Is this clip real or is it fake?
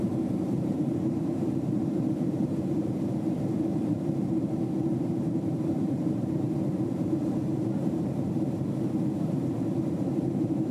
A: fake